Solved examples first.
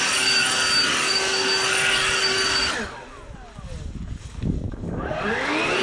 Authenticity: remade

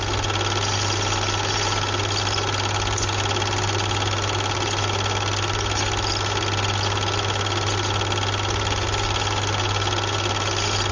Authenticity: recorded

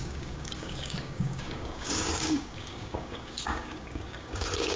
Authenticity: remade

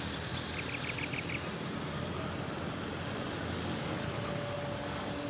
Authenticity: recorded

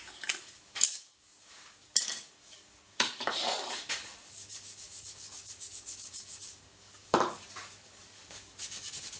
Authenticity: remade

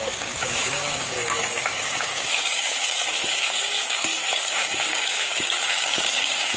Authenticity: remade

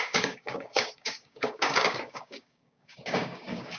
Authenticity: remade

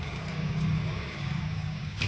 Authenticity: remade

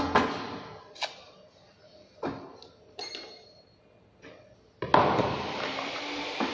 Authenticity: recorded